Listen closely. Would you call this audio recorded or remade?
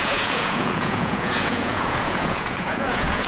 remade